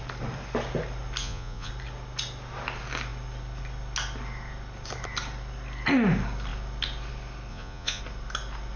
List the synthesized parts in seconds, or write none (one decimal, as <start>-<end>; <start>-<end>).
1.2-1.7; 7.5-8.0